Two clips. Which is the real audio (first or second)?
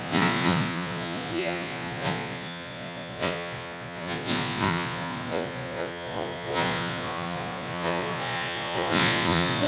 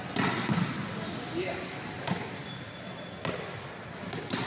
second